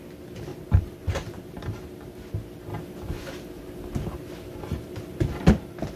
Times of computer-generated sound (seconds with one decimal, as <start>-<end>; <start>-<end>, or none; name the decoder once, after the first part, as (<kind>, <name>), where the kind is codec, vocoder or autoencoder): 0.5-2.3 (vocoder, BigVGAN v2)